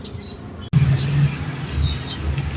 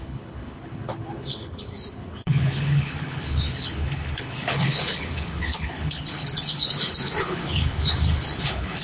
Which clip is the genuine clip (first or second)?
first